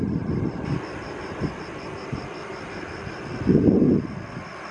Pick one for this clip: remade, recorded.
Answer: recorded